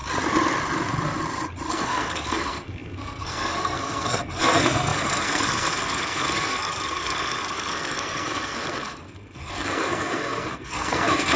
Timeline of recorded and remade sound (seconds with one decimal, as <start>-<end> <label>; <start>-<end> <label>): 0.0-1.7 recorded; 1.7-11.4 remade